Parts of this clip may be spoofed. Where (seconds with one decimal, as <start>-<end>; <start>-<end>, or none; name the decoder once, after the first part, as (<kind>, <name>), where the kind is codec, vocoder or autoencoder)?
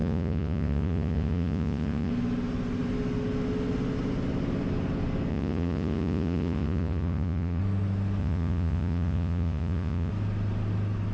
0.0-2.1 (vocoder, Vocos); 5.3-7.6; 8.2-10.1